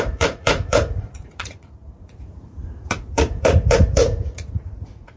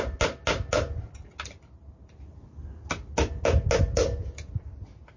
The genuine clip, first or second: second